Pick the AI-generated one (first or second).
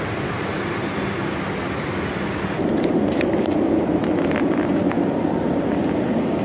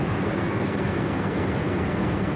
second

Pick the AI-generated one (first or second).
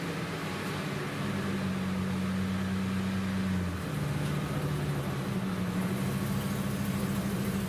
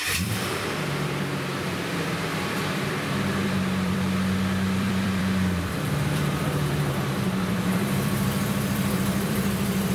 second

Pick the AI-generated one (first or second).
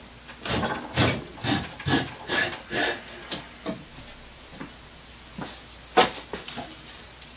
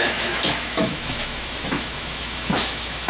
second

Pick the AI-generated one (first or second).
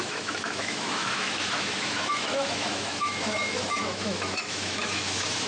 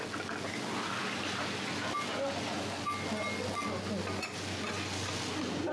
first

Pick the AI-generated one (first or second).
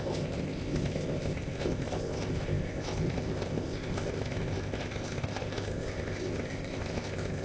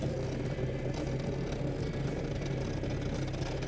first